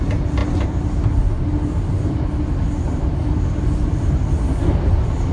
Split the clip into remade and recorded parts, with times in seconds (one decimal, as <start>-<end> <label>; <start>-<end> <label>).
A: 0.0-5.3 recorded